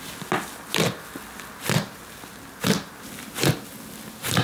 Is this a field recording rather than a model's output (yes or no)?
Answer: yes